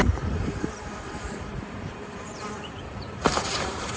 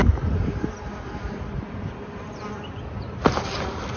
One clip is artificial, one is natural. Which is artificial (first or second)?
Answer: first